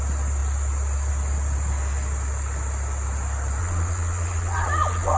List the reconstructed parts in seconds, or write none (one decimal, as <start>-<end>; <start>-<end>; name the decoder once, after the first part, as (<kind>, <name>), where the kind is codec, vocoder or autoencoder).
3.6-5.2 (vocoder, Vocos)